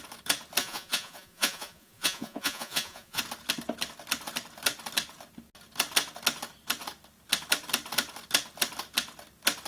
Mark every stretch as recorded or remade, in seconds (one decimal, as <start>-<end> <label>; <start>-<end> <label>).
0.0-0.6 recorded; 0.6-3.2 remade; 3.2-9.7 recorded